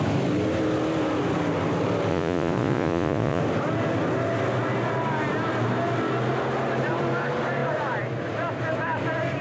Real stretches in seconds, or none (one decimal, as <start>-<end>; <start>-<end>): 0.0-2.1; 3.4-9.4